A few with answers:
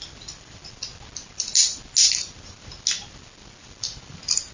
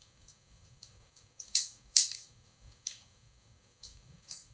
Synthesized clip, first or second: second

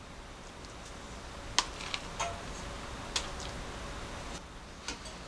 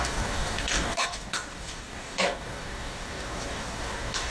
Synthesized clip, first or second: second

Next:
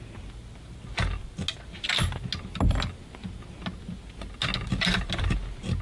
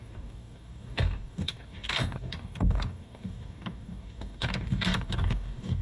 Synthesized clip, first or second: second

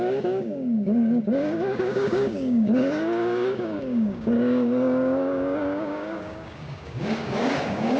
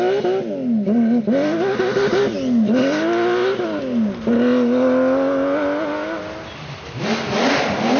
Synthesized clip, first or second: first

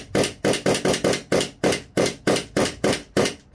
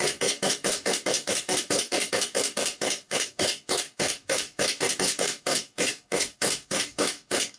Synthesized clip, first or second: second